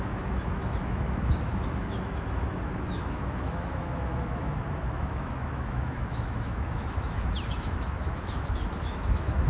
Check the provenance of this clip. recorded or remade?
remade